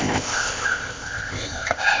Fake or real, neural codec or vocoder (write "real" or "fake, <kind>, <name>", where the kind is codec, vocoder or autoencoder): fake, codec, ZipCodec